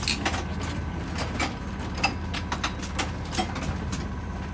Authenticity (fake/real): real